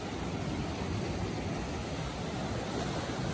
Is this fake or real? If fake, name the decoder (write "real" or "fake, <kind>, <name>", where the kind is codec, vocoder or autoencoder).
real